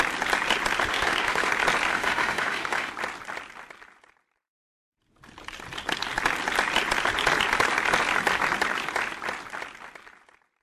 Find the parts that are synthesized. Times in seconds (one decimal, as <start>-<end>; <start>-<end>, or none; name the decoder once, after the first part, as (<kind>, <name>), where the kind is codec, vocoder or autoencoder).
0.9-1.5 (autoencoder, DAC-VAE); 1.9-2.9